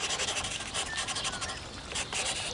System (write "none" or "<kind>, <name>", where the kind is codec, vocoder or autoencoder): none